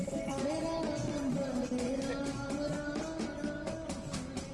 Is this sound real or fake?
real